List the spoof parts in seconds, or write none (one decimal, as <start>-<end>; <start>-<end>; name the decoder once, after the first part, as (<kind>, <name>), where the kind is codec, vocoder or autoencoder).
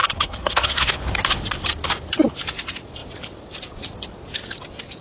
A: 0.0-1.0 (codec, HILCodec)